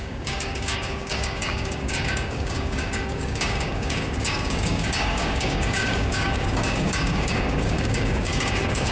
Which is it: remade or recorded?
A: remade